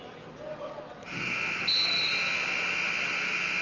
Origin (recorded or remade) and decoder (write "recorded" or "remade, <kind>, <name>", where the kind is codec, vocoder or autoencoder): recorded